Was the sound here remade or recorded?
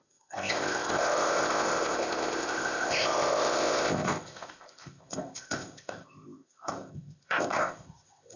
remade